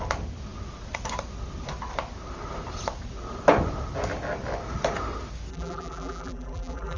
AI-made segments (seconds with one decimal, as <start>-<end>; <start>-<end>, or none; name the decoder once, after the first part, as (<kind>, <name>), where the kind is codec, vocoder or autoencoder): 5.5-7.0 (vocoder, BigVGAN v2)